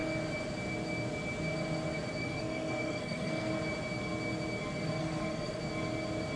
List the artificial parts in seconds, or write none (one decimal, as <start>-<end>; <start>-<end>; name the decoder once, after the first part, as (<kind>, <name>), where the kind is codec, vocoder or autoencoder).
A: 2.2-3.5 (codec, SNAC); 5.0-5.6